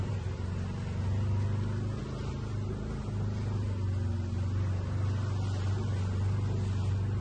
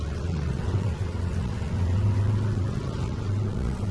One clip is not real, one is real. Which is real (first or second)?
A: first